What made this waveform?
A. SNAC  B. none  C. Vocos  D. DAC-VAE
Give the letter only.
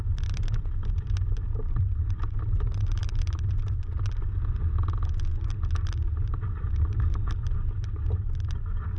B